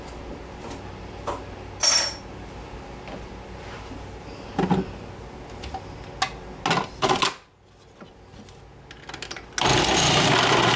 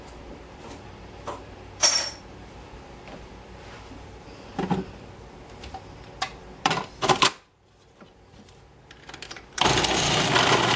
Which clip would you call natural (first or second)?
first